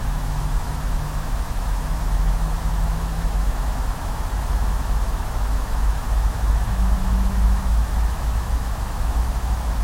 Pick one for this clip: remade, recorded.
remade